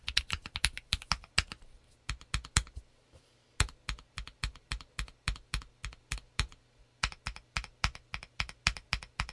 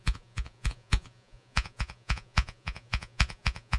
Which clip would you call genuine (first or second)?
first